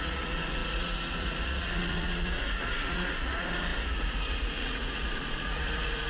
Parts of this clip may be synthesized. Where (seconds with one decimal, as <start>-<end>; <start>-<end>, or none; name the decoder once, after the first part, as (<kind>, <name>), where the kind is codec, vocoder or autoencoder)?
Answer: 0.0-6.1 (vocoder, Vocos)